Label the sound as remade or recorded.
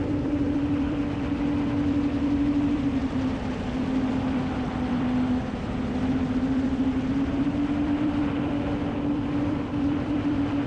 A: remade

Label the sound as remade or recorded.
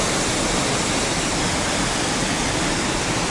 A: recorded